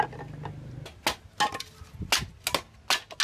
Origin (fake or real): real